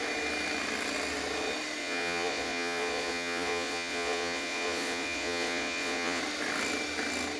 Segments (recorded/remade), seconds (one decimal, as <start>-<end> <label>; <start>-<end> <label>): 0.0-1.8 recorded; 1.8-6.2 remade; 6.2-7.4 recorded